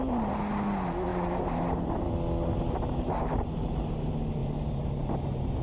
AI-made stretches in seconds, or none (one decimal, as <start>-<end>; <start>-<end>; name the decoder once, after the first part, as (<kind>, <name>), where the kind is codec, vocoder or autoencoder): 1.1-1.9 (vocoder, BigVGAN v2); 4.4-5.6